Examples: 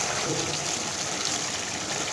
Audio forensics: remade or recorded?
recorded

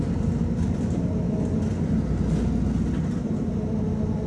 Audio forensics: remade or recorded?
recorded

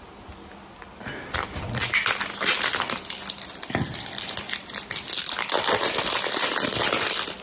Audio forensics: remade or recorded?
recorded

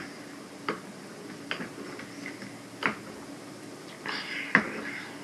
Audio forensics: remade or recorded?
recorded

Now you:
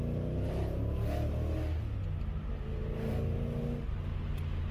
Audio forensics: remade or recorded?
recorded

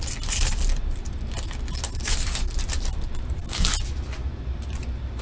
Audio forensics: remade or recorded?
recorded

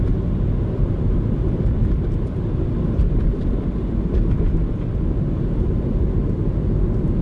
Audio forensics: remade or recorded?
remade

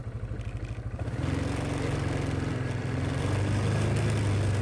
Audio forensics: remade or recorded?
recorded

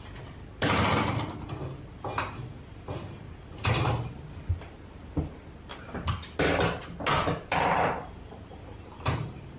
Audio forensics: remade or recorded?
recorded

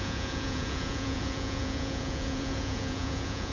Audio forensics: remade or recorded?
remade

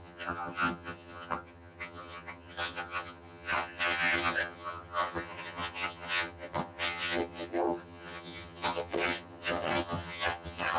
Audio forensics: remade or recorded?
remade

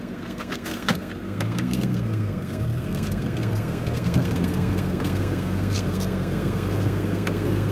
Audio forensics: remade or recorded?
remade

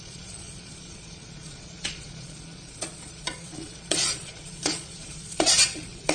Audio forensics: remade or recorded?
remade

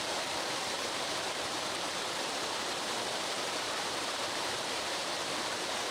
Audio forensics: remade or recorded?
remade